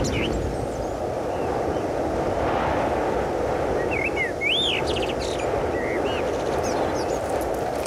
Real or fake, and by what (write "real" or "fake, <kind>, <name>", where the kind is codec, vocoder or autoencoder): real